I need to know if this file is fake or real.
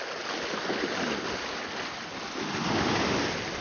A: real